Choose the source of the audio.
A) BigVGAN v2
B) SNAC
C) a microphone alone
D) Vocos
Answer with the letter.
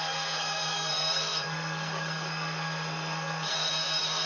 B